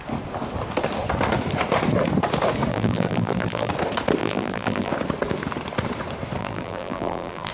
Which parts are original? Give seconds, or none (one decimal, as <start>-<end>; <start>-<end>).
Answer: 0.0-2.7; 3.7-4.2; 4.9-6.4